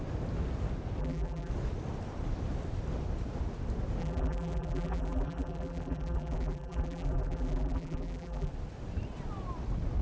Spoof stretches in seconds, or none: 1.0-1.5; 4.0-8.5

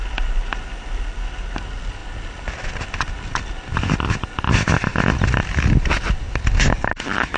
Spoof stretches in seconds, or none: none

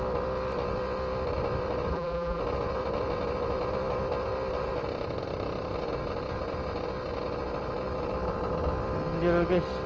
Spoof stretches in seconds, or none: 1.9-2.4

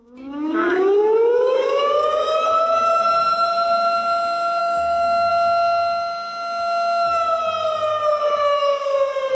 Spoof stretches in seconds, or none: 0.0-2.5; 4.6-5.3; 7.9-9.3

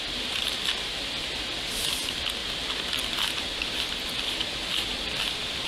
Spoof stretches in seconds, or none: none

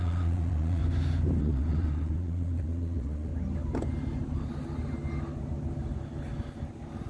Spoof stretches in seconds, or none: 0.0-0.8; 1.4-3.3

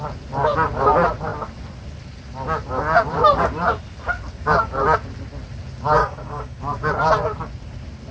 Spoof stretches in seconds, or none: 6.0-6.6

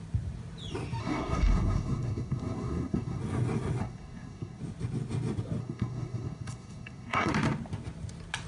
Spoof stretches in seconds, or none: 1.0-3.2; 3.8-4.6; 5.6-7.3